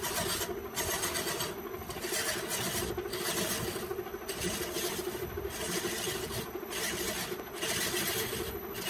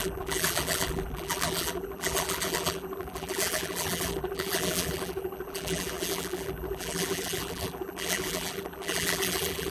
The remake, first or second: second